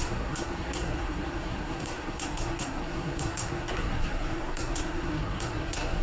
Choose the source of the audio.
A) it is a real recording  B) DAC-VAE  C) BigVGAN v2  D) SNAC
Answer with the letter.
D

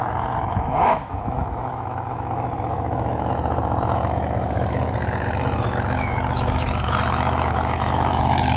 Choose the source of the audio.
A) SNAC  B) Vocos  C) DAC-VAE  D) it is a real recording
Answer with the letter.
C